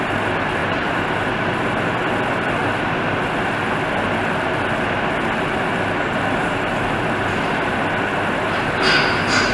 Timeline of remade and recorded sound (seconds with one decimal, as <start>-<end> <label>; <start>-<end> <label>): 0.0-0.6 recorded; 0.6-1.2 remade; 1.2-9.5 recorded